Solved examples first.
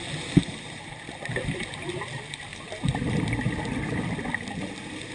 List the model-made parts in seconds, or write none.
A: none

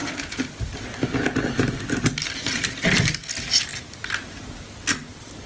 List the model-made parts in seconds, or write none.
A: 3.7-4.3 (vocoder, BigVGAN v2)